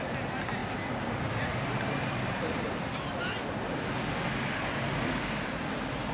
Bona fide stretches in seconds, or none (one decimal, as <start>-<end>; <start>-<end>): 0.0-6.1